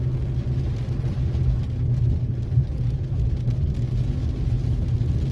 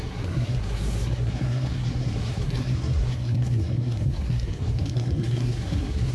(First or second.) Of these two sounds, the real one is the first